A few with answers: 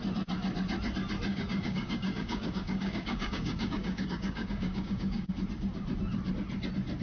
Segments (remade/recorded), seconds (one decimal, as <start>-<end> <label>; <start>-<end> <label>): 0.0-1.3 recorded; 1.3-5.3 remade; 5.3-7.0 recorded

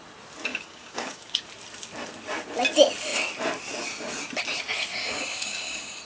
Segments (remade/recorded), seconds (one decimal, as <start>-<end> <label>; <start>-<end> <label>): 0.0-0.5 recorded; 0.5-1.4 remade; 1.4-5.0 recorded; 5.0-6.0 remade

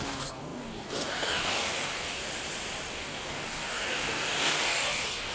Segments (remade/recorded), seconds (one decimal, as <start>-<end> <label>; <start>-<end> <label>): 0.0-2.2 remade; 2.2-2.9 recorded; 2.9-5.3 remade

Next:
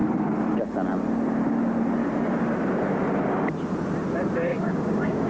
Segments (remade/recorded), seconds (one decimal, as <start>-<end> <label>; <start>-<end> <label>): 0.0-4.5 recorded; 4.5-5.3 remade

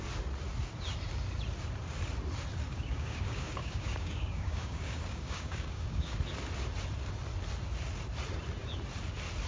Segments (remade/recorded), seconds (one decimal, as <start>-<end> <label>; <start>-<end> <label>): 0.0-2.7 recorded; 2.7-6.2 remade; 6.2-9.5 recorded

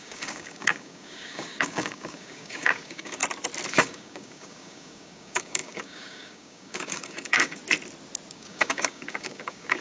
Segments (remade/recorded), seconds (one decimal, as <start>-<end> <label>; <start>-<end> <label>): 0.0-3.2 remade; 3.2-3.7 recorded; 3.7-7.6 remade; 7.6-8.3 recorded; 8.3-9.8 remade

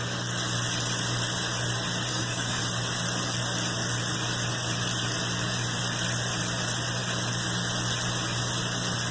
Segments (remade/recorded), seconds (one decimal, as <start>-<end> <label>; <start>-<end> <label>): 0.0-2.1 recorded; 2.1-2.6 remade; 2.6-9.1 recorded

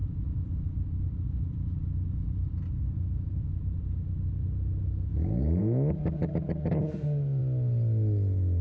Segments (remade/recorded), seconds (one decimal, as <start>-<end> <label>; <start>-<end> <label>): 0.0-6.0 recorded; 6.0-7.4 remade; 7.4-8.6 recorded